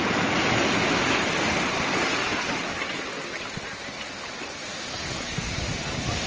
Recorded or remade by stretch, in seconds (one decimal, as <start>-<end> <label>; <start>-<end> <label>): 0.0-4.9 recorded; 4.9-5.5 remade; 5.5-6.3 recorded